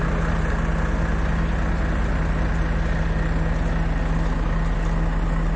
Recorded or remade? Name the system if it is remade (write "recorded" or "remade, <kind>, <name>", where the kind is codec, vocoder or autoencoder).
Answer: recorded